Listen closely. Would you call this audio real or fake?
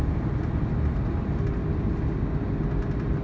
real